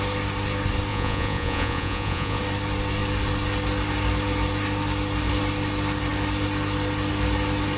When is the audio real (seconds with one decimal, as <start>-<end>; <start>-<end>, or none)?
0.0-0.9; 2.4-7.8